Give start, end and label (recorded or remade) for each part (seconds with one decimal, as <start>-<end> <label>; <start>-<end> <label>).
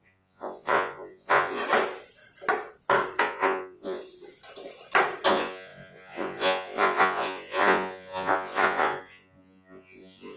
0.0-1.6 remade; 1.6-3.2 recorded; 3.2-4.0 remade; 4.0-5.3 recorded; 5.3-10.4 remade